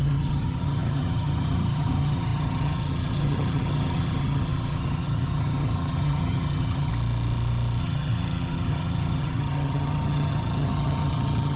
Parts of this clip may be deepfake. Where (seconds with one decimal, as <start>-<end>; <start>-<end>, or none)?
0.0-6.9; 7.8-11.6